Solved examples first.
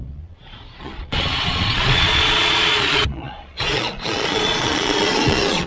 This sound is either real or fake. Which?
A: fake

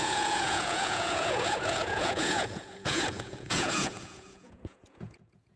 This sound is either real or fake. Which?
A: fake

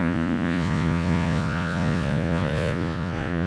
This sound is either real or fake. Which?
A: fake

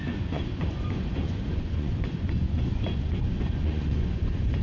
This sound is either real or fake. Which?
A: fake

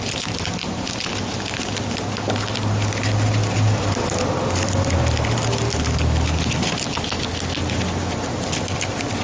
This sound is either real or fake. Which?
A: real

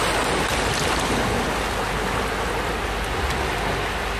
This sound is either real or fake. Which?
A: real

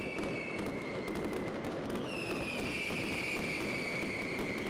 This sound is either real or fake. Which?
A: real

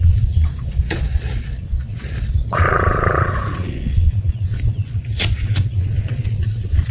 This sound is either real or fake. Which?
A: fake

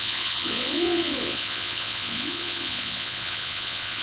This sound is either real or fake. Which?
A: fake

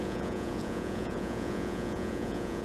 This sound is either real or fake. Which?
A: fake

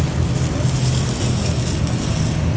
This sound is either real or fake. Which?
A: real